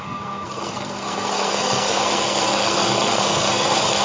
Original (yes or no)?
no